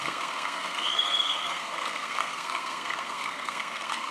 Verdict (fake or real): fake